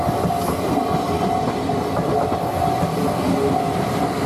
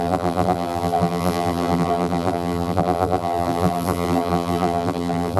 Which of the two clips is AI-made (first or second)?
second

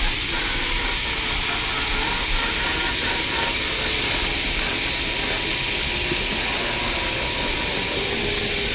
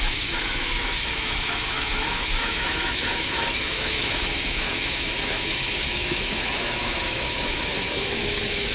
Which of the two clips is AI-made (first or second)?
second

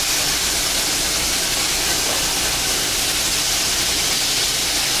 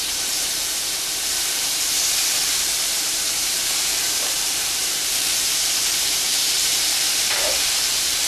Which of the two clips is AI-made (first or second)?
second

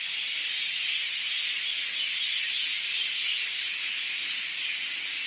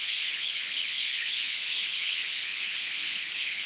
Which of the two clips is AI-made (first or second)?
second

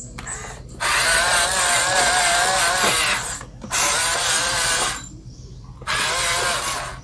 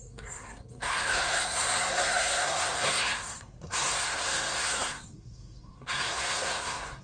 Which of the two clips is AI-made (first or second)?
second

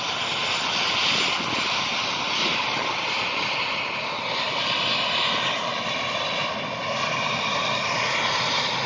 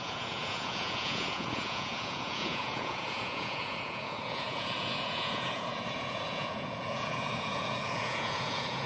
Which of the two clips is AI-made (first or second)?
second